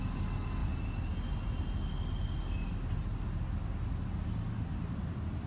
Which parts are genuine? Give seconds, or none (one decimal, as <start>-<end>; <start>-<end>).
0.0-5.5